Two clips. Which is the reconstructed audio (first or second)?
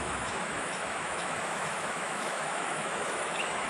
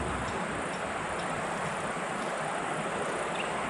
first